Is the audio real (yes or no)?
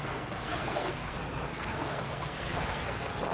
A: no